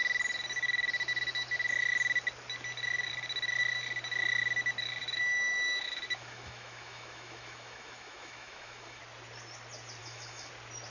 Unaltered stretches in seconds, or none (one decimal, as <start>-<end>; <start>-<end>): 0.0-5.0; 9.0-10.0; 10.5-10.9